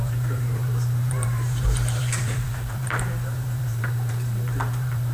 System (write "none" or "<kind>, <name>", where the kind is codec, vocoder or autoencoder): vocoder, BigVGAN v2